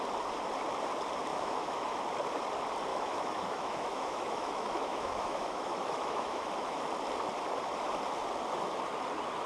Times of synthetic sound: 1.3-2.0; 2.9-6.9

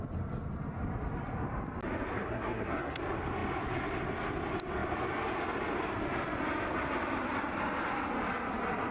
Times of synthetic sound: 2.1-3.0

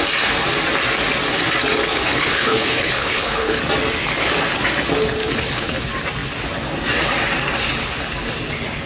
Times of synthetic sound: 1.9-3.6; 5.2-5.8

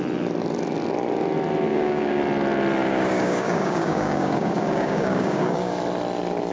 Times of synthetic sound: 1.7-2.2; 2.8-5.8

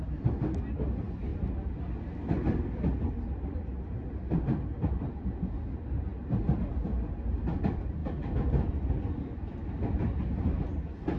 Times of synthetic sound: none